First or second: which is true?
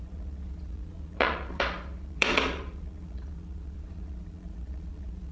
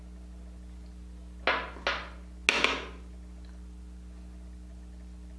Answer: second